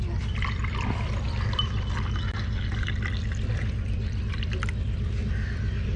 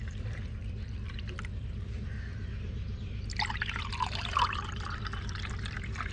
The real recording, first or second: first